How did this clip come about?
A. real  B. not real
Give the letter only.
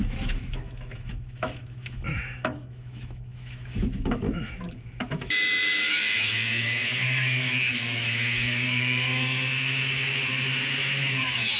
B